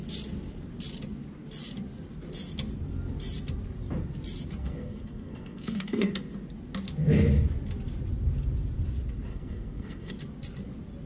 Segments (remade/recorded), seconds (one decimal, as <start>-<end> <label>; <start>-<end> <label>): 0.0-4.6 recorded; 4.6-6.1 remade; 6.1-9.3 recorded; 9.3-10.1 remade; 10.1-11.1 recorded